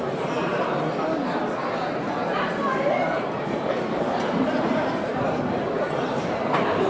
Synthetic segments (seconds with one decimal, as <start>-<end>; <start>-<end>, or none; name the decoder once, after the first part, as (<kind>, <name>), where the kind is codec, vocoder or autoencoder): 0.0-0.5 (vocoder, BigVGAN v2); 2.9-6.9